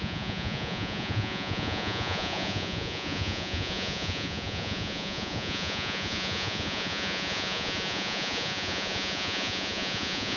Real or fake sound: fake